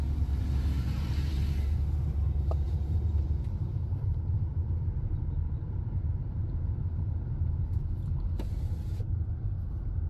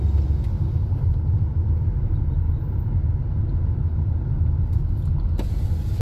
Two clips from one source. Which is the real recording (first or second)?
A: second